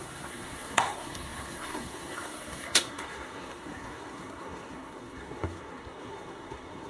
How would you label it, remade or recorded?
remade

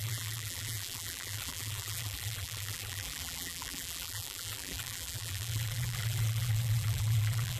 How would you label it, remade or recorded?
remade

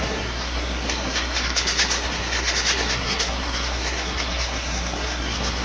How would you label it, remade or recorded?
remade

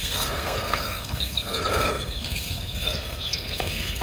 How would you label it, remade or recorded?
remade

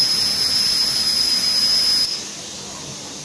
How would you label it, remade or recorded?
recorded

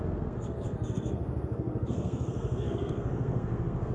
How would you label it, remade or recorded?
remade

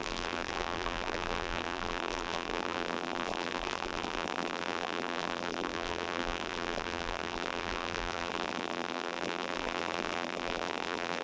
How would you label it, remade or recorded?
remade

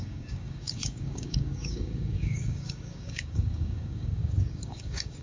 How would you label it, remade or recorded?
remade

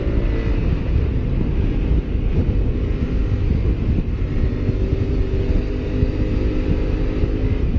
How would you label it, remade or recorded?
recorded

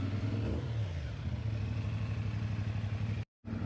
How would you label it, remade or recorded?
recorded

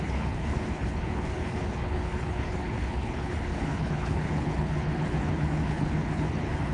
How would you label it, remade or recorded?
remade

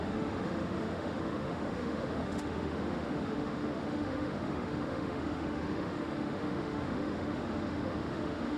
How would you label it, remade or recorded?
remade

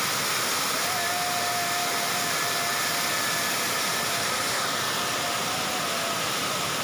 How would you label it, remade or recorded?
recorded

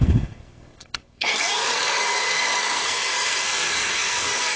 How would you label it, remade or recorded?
remade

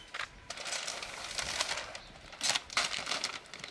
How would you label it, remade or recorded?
recorded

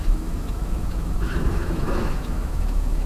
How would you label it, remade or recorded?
remade